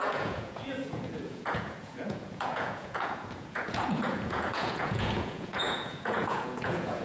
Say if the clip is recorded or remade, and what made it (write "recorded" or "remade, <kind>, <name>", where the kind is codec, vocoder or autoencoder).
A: remade, vocoder, Vocos